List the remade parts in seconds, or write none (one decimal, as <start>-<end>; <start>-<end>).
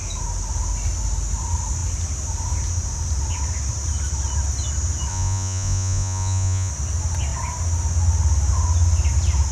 5.1-6.7